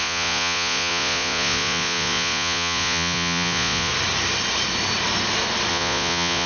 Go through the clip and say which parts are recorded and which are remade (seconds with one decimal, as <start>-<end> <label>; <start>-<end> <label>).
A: 0.0-3.9 remade; 3.9-5.7 recorded; 5.7-6.5 remade